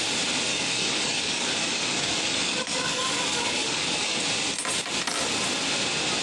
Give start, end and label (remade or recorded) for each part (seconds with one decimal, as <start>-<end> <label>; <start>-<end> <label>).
0.0-0.5 recorded; 0.5-4.2 remade; 4.2-6.2 recorded